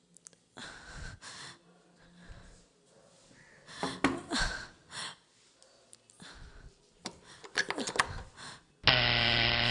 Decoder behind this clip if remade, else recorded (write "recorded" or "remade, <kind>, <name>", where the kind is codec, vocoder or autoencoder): recorded